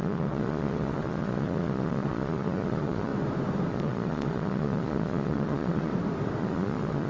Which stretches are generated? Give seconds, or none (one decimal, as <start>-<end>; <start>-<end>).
0.0-3.1; 3.7-5.9; 6.4-7.1